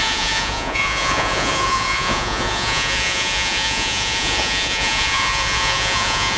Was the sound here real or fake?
fake